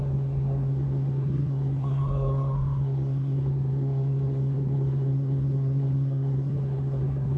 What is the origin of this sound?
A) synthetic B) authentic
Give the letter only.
A